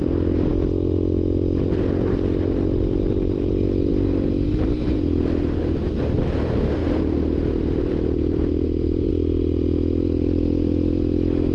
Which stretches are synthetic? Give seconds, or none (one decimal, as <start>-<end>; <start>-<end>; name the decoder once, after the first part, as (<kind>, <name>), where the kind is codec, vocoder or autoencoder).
6.8-9.1 (vocoder, BigVGAN v2)